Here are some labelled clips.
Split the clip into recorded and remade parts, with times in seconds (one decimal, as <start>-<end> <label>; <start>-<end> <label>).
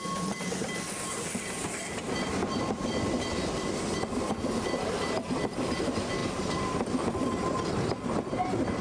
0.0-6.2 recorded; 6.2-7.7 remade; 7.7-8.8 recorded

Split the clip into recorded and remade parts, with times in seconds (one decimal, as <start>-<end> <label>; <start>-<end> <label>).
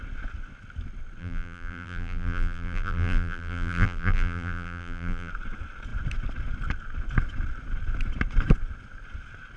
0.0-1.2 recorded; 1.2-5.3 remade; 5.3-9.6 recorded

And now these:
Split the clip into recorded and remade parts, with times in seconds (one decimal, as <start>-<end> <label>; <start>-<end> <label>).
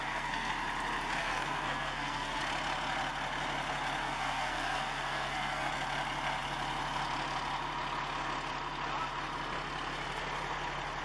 0.0-0.5 remade; 0.5-1.2 recorded; 1.2-2.4 remade; 2.4-4.0 recorded; 4.0-5.7 remade; 5.7-11.0 recorded